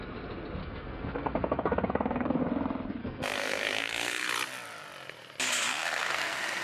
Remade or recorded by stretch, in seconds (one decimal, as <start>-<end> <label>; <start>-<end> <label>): 0.0-0.6 recorded; 0.6-2.4 remade; 2.4-3.0 recorded; 3.0-4.3 remade; 4.3-5.7 recorded; 5.7-6.6 remade